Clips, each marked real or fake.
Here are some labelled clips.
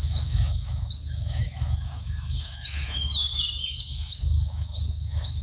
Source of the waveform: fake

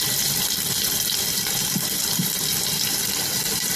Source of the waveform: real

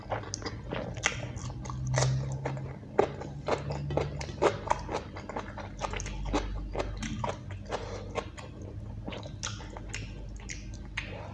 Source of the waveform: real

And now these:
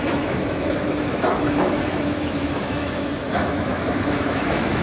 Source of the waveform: fake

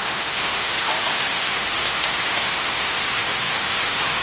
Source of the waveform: fake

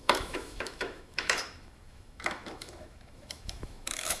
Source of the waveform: fake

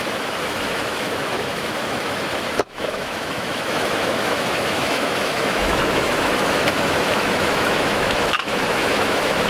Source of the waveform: fake